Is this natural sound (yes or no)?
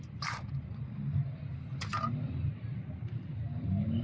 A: yes